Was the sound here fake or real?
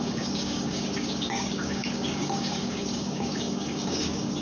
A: fake